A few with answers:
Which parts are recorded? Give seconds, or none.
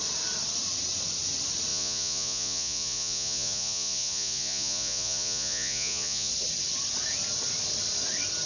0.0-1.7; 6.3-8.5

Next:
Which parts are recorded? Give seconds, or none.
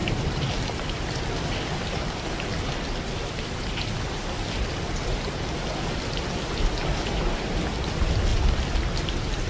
1.5-9.5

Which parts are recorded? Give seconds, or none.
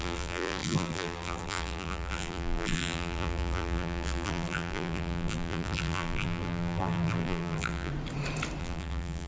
7.9-8.6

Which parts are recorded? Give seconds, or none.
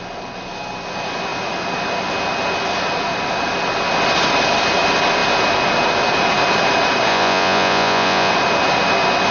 0.0-7.1; 8.3-9.3